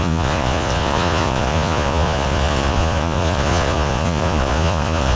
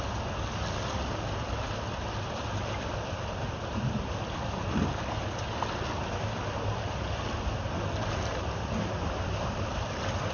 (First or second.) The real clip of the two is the second